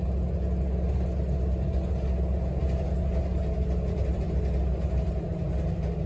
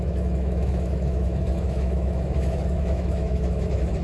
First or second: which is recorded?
first